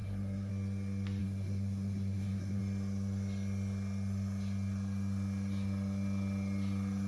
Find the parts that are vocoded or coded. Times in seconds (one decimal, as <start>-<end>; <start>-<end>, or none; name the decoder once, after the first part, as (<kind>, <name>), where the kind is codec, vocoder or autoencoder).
0.0-0.5 (codec, SNAC); 1.2-2.6